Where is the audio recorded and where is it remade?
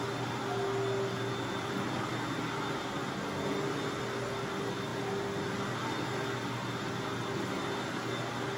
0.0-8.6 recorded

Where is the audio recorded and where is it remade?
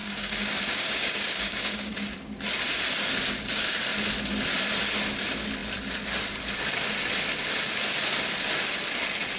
0.0-1.9 remade; 1.9-9.4 recorded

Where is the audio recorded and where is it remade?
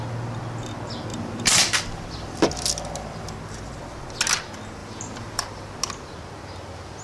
0.0-1.1 recorded; 1.1-2.7 remade; 2.7-4.8 recorded; 4.8-5.6 remade; 5.6-7.0 recorded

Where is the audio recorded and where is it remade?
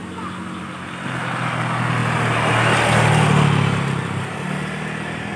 0.0-5.4 recorded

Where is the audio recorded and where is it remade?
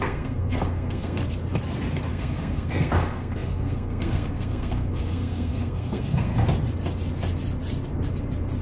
0.0-1.2 remade; 1.2-2.1 recorded; 2.1-6.3 remade; 6.3-8.6 recorded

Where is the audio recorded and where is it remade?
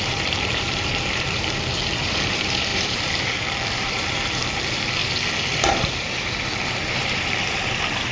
0.0-5.0 remade; 5.0-5.7 recorded; 5.7-8.1 remade